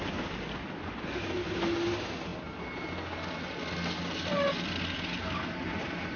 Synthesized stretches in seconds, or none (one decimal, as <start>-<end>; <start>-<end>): none

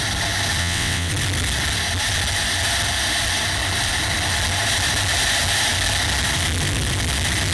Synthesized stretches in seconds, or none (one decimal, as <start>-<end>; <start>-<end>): 0.6-1.1

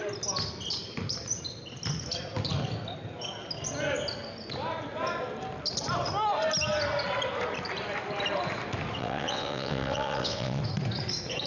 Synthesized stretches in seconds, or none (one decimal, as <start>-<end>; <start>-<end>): 9.0-10.6

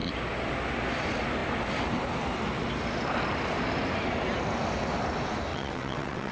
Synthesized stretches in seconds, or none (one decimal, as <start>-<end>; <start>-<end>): 5.5-6.3